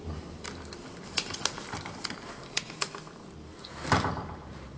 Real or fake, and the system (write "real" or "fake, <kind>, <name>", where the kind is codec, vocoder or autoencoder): real